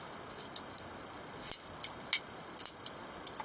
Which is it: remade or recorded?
recorded